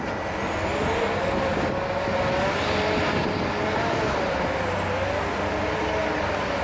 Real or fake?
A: real